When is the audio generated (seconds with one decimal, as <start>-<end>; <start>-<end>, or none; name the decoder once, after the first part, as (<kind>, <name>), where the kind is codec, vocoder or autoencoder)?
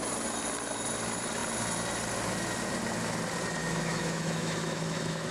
3.6-5.3 (autoencoder, DAC-VAE)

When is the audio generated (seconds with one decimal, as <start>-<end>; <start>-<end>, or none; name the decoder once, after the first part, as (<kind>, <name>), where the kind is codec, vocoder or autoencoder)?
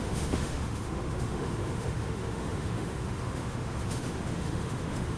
0.0-5.2 (autoencoder, DAC-VAE)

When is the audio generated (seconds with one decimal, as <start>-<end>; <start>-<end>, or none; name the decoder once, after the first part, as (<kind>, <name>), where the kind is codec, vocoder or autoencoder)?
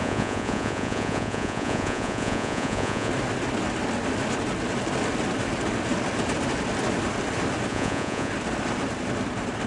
0.0-3.1 (vocoder, Vocos); 7.7-8.3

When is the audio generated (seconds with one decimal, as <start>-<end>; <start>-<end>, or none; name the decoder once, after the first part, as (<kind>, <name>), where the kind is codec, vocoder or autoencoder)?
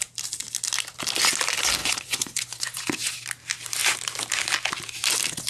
1.8-3.1 (vocoder, Vocos)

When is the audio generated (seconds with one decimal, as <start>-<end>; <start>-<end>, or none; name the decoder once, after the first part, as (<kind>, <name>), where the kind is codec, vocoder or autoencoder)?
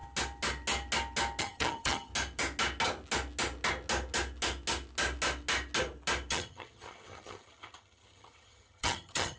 1.4-2.1 (vocoder, HiFi-GAN); 6.3-9.4